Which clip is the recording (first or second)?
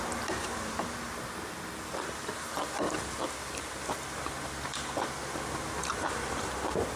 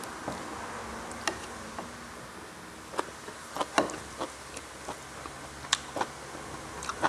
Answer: second